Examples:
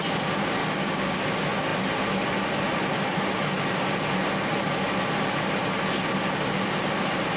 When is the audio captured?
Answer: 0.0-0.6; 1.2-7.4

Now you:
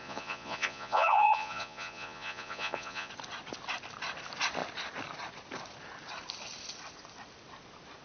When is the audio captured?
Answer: 3.1-8.0